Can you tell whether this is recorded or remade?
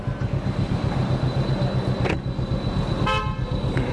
recorded